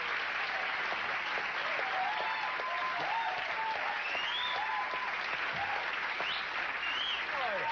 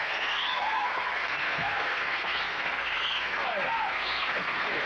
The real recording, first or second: first